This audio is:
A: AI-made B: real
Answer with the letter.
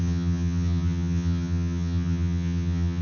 A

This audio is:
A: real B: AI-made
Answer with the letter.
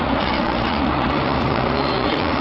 B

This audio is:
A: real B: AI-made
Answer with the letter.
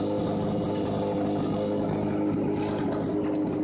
A